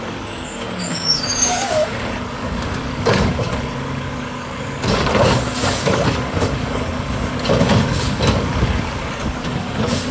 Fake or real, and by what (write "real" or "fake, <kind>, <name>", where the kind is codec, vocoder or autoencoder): fake, codec, DAC